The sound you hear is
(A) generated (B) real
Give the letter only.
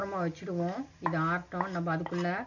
B